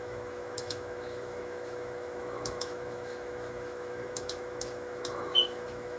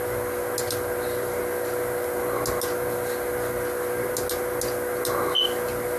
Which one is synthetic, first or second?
first